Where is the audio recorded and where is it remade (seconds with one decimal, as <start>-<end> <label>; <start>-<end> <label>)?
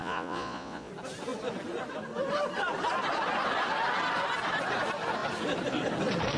0.0-0.9 remade; 0.9-6.4 recorded